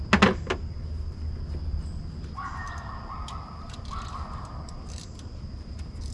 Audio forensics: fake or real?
real